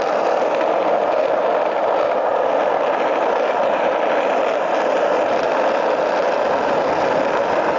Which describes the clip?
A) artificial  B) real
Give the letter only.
B